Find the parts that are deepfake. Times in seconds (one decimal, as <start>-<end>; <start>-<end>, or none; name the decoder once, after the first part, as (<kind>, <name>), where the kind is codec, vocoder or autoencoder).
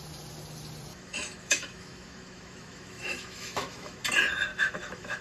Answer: 0.9-4.0 (autoencoder, DAC-VAE); 4.5-5.2